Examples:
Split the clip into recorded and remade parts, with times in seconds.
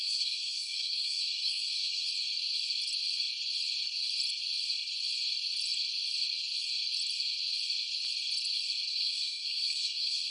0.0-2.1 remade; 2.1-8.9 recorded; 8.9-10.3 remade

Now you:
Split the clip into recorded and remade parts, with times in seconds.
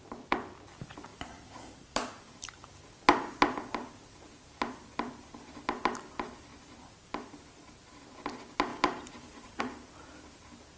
0.0-1.1 recorded; 1.1-2.7 remade; 2.7-8.7 recorded; 8.7-9.6 remade; 9.6-10.8 recorded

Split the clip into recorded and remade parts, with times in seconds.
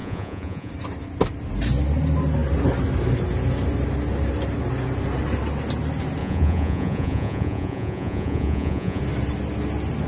0.0-0.7 remade; 0.7-6.2 recorded; 6.2-9.0 remade; 9.0-10.1 recorded